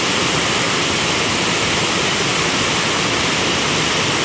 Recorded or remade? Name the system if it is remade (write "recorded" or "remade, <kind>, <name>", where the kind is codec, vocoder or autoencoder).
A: remade, vocoder, BigVGAN v2